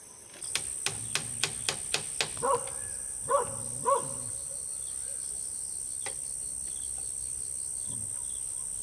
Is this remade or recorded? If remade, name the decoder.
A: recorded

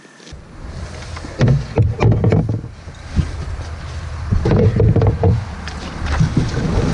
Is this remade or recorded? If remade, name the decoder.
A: recorded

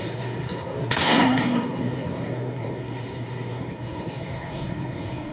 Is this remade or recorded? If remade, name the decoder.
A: remade, codec, SNAC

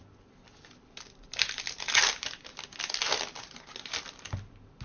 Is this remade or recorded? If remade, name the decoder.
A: recorded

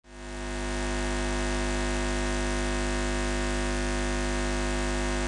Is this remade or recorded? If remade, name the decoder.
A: recorded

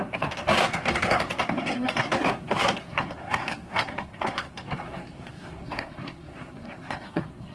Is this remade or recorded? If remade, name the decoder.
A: remade, codec, SNAC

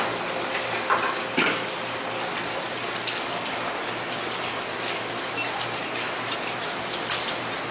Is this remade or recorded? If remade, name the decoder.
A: recorded